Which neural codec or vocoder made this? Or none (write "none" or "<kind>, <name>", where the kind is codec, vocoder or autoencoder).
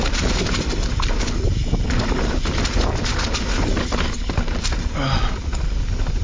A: none